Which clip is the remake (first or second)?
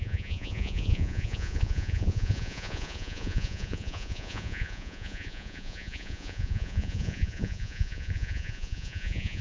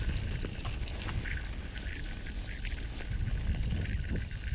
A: first